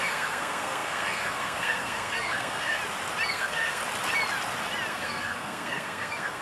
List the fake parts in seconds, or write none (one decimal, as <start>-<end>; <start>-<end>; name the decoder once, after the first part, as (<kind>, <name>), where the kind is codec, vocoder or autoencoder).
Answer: 0.0-2.8 (codec, SNAC); 3.3-3.8; 4.9-6.4